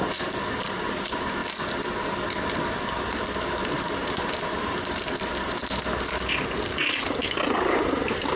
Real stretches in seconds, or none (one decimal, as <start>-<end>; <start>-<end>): 1.4-2.8

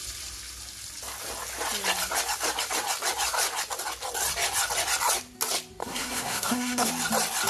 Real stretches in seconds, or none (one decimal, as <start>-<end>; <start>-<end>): 0.0-5.8; 6.9-7.5